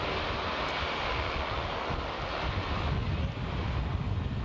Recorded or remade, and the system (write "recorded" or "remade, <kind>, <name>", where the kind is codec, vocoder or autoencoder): recorded